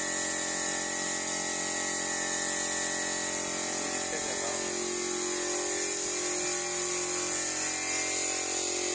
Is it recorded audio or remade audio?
recorded